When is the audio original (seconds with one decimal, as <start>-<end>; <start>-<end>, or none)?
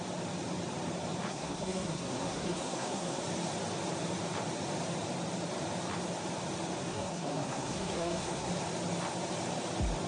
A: 0.0-1.3; 3.2-6.9; 8.5-10.1